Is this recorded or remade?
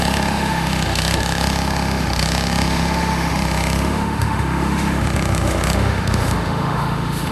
remade